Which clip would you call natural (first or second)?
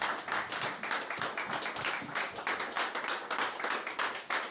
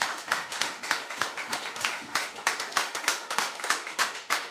first